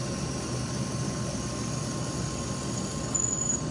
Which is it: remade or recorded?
recorded